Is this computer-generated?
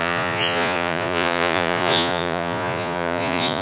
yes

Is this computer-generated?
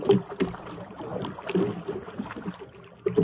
no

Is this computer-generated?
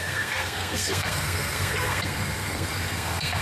yes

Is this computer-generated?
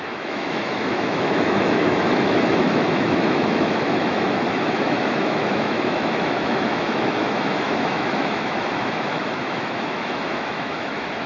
yes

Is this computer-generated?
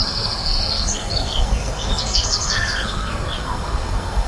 yes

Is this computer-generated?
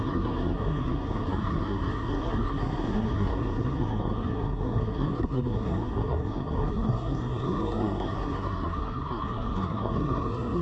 yes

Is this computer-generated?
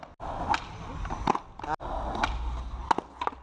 no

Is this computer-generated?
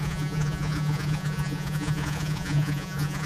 yes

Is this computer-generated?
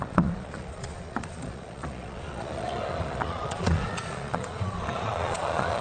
yes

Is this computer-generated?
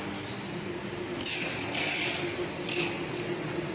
no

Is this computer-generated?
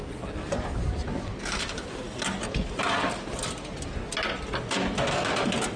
no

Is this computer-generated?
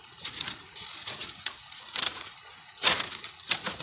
yes